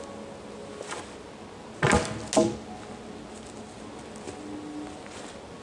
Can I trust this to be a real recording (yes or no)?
yes